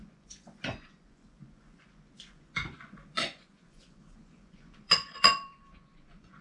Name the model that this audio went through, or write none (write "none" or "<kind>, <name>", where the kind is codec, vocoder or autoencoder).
vocoder, Vocos